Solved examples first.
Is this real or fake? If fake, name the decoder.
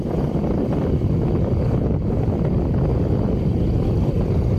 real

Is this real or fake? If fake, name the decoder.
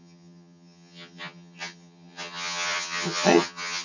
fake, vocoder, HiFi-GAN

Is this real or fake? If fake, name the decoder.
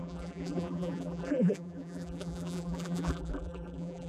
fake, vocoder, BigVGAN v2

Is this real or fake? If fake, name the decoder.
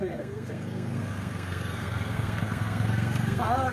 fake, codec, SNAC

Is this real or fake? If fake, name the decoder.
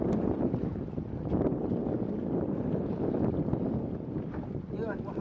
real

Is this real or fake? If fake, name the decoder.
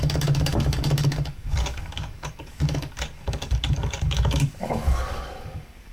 fake, codec, DAC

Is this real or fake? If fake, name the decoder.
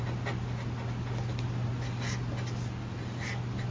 real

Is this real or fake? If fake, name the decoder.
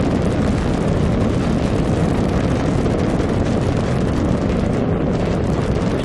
real